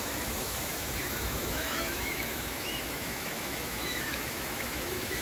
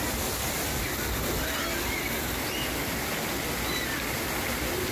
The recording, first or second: second